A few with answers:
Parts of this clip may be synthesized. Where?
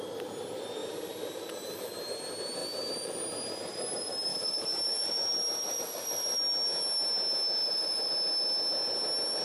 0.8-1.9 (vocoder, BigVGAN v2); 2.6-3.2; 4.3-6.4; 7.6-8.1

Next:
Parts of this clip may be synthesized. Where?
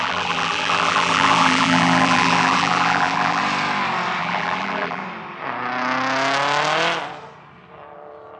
0.0-3.4 (vocoder, BigVGAN v2); 4.2-5.0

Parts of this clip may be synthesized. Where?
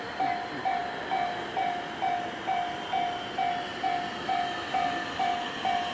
none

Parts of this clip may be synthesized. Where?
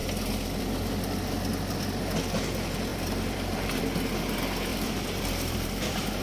2.9-3.8 (vocoder, BigVGAN v2); 4.7-6.2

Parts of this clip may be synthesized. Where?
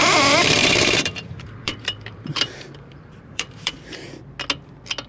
0.6-3.7 (vocoder, BigVGAN v2)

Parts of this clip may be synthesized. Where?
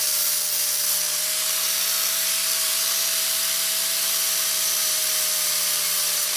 0.6-5.0 (vocoder, BigVGAN v2); 5.9-6.4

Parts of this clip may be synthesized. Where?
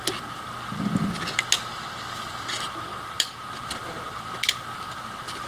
none